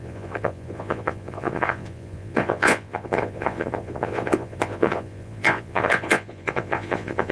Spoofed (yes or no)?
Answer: yes